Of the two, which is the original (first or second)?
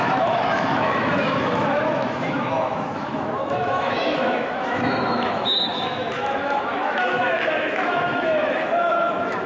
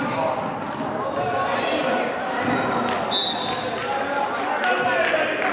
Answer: second